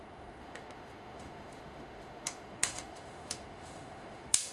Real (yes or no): no